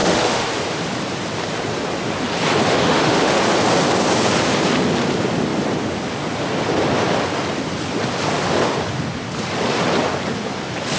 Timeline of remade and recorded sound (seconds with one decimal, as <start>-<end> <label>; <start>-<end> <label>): 0.0-0.5 remade; 0.5-2.7 recorded; 2.7-3.4 remade; 3.4-11.0 recorded